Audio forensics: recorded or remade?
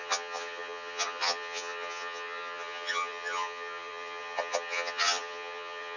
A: remade